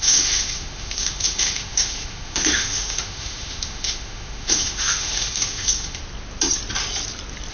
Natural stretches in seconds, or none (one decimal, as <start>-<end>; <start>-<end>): 6.0-7.5